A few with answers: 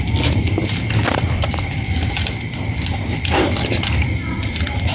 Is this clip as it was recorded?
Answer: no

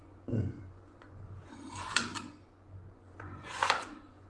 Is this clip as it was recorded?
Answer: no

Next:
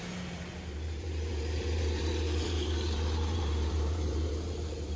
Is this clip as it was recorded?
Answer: no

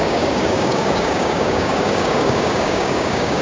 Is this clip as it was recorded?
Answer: no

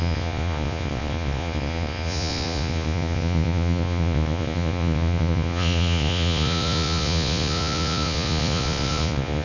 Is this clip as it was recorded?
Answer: no